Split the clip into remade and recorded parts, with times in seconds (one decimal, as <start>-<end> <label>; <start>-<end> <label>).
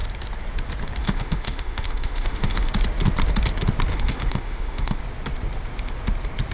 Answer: 0.0-1.0 recorded; 1.0-2.7 remade; 2.7-3.9 recorded; 3.9-5.0 remade; 5.0-6.5 recorded